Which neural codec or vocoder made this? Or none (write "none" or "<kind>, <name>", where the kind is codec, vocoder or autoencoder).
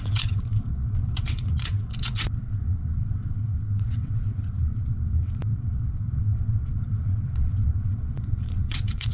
vocoder, WaveNeXt